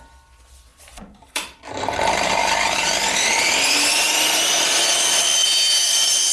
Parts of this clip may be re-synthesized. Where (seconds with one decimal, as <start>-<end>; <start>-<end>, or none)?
0.7-4.5; 5.4-6.3